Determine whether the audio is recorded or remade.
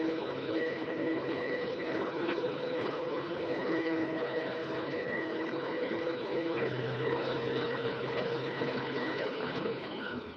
remade